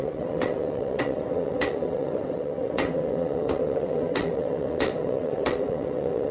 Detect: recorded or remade remade